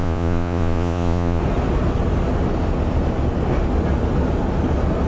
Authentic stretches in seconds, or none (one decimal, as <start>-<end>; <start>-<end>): 1.4-5.1